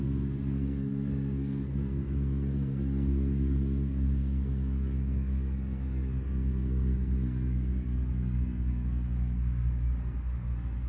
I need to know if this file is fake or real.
fake